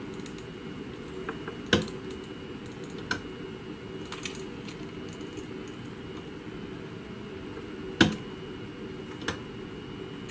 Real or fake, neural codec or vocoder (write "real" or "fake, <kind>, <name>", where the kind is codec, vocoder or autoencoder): real